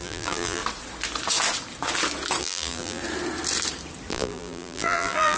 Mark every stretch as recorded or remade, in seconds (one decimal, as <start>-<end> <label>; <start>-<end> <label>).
0.0-0.6 remade; 0.6-2.4 recorded; 2.4-3.0 remade; 3.0-4.1 recorded; 4.1-5.4 remade